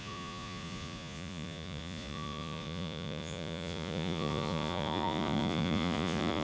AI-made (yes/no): yes